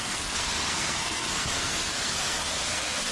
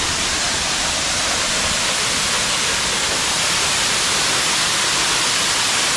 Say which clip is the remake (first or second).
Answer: first